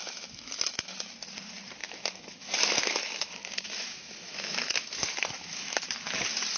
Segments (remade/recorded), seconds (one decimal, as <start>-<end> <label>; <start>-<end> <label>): 0.0-1.1 remade; 1.1-1.8 recorded; 1.8-5.8 remade; 5.8-6.6 recorded